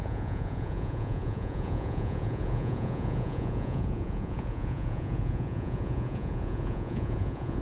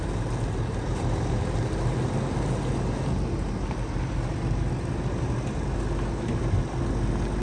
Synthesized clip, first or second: first